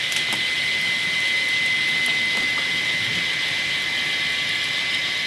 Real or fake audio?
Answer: real